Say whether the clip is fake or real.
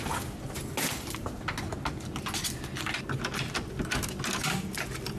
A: real